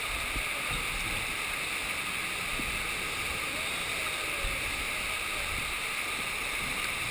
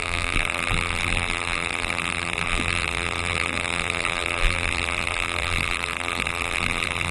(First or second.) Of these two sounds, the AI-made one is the second